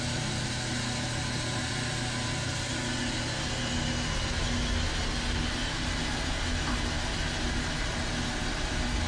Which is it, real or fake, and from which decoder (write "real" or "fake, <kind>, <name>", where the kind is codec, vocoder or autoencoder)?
real